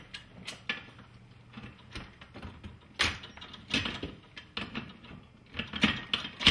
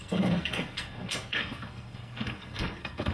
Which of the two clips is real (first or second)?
first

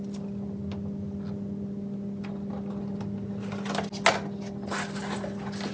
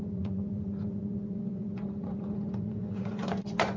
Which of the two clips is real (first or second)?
first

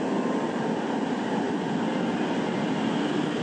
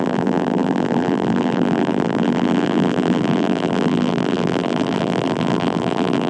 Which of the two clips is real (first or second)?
first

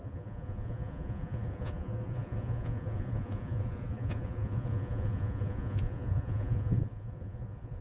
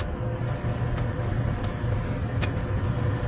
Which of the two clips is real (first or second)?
second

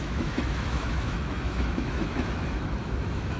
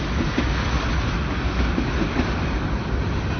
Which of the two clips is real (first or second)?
second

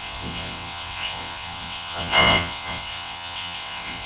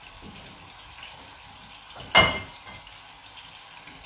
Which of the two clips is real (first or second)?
second